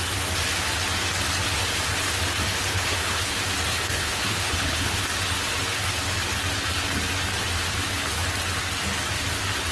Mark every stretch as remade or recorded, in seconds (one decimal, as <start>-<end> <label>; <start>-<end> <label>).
0.0-2.7 recorded; 2.7-3.3 remade; 3.3-3.7 recorded; 3.7-5.0 remade; 5.0-9.7 recorded